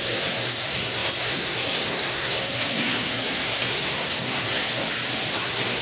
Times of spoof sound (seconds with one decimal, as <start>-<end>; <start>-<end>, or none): 0.0-4.6; 5.3-5.8

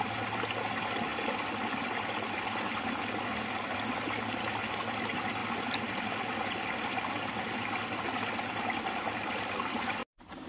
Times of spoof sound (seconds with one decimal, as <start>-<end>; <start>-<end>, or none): 5.4-6.0